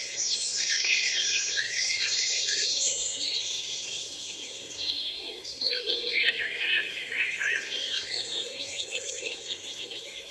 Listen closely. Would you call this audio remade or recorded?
remade